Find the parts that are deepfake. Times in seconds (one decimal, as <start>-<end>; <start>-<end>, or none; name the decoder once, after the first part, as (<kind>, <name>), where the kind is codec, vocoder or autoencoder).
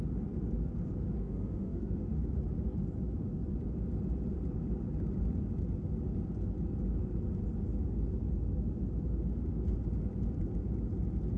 1.2-2.2 (autoencoder, DAC-VAE)